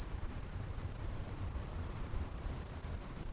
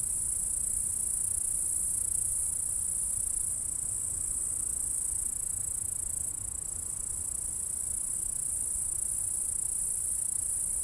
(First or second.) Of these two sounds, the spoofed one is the first